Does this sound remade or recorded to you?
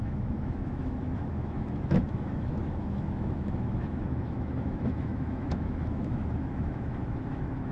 remade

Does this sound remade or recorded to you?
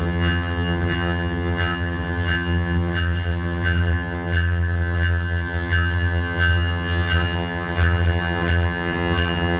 remade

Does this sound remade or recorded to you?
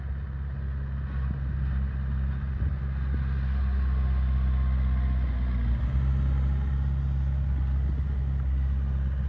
recorded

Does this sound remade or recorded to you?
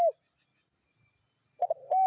recorded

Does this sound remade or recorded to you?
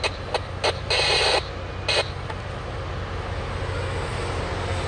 recorded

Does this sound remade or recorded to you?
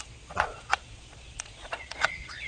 remade